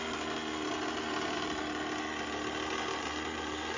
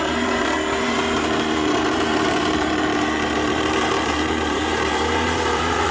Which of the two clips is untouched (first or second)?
first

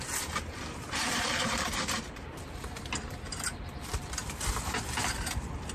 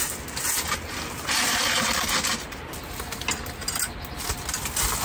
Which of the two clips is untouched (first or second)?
second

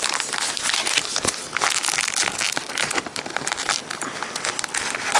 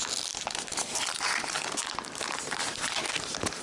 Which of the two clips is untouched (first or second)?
first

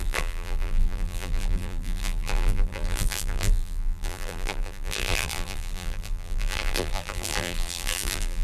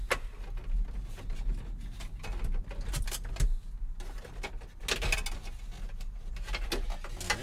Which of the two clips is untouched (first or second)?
second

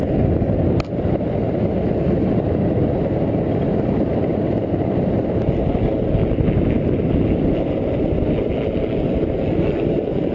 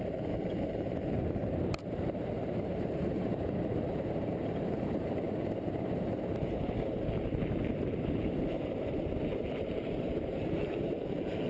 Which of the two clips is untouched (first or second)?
first